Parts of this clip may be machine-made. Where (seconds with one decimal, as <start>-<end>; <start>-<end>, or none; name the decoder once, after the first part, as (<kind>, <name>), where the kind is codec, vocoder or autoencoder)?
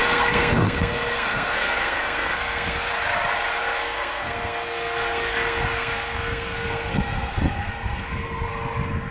0.0-2.9 (codec, SNAC); 3.6-8.5